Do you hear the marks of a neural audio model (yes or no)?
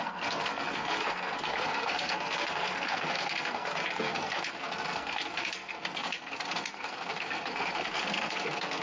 yes